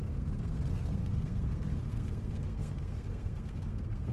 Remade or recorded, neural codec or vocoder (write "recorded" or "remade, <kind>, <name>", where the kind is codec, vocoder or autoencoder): remade, codec, SNAC